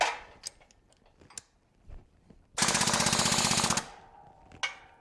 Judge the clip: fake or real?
real